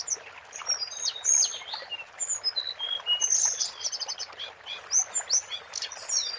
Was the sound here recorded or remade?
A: recorded